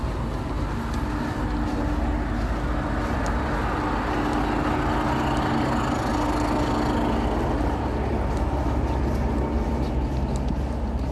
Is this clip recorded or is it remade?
recorded